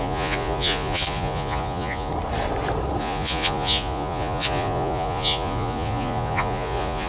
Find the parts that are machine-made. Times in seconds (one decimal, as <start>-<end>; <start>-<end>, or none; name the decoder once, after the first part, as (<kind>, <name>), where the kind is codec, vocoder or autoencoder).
0.0-2.1 (vocoder, Vocos); 3.0-7.1